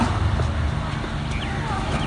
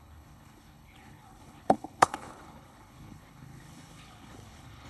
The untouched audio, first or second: first